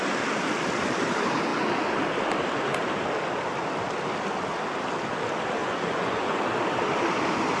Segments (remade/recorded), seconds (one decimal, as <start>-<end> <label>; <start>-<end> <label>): 0.0-5.6 recorded; 5.6-6.4 remade; 6.4-7.6 recorded